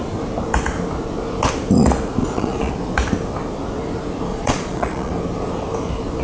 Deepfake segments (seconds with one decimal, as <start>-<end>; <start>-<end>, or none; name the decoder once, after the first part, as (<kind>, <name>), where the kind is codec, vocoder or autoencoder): 2.2-2.7 (vocoder, Vocos); 4.3-5.1